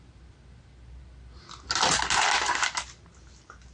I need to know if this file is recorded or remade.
recorded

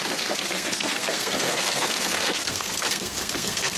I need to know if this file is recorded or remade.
remade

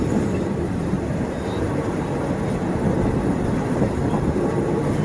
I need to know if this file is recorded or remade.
recorded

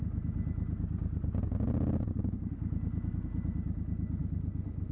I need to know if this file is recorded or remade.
recorded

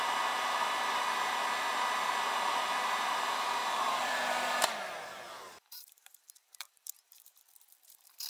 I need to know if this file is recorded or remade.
remade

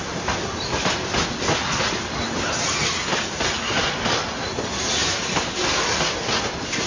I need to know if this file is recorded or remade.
recorded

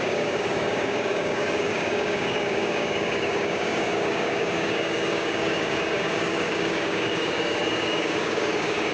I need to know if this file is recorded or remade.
remade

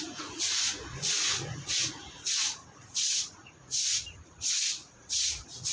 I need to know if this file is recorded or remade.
remade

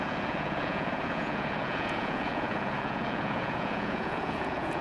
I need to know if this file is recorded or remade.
remade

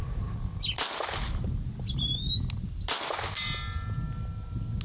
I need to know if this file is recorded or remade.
recorded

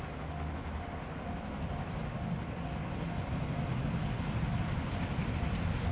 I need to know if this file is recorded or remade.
recorded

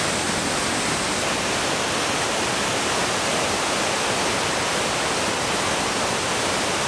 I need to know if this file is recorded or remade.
recorded